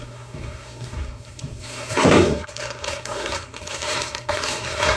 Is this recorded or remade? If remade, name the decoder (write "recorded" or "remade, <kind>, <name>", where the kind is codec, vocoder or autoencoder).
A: remade, codec, SNAC